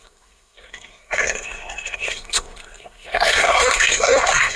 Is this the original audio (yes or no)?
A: no